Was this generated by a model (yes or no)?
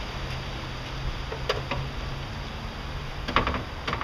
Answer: no